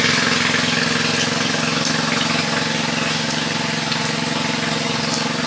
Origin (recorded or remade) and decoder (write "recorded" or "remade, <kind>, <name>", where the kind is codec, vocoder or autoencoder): recorded